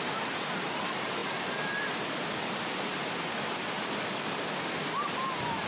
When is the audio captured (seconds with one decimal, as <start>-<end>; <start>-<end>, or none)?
0.0-5.7